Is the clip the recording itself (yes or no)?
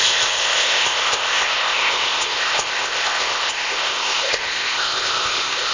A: no